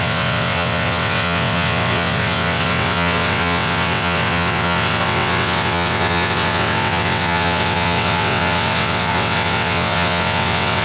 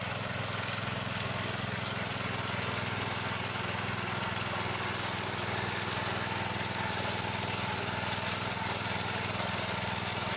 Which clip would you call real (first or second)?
second